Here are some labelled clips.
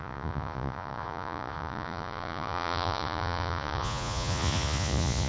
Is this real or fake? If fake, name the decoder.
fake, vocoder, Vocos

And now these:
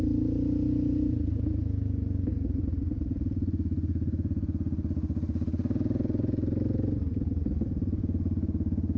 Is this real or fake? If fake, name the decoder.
real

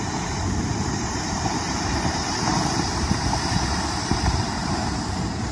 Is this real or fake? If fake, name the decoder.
fake, vocoder, BigVGAN v2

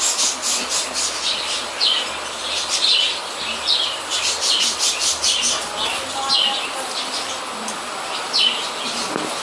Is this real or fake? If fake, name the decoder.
real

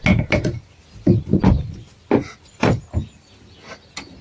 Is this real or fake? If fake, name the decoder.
real